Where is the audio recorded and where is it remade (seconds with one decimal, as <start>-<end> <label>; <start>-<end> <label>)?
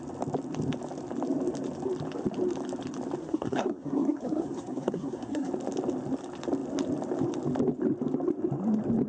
0.0-3.2 recorded; 3.2-5.5 remade; 5.5-9.1 recorded